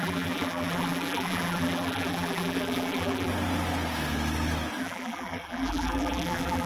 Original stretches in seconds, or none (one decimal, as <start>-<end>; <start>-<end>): 3.3-4.8